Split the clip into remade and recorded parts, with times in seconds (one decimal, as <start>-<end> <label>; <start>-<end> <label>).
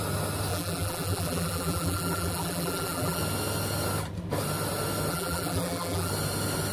0.0-0.5 recorded; 0.5-3.2 remade; 3.2-5.1 recorded; 5.1-6.1 remade; 6.1-6.7 recorded